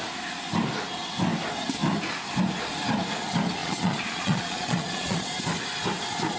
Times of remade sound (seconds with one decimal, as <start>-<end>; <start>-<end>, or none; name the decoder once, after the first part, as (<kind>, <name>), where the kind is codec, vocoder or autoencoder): 3.6-5.4 (vocoder, Vocos)